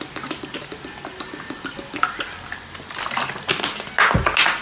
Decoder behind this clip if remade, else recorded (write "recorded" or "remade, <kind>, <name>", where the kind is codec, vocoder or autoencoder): recorded